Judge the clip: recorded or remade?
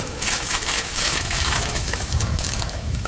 remade